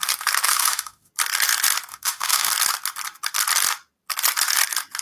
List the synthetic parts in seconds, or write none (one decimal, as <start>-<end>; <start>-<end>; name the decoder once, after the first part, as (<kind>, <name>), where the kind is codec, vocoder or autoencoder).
0.5-1.1 (autoencoder, DAC-VAE); 1.9-2.5